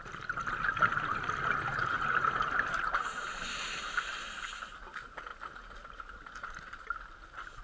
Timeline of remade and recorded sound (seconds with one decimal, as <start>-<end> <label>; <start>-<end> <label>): 0.0-1.9 recorded; 1.9-3.8 remade; 3.8-7.6 recorded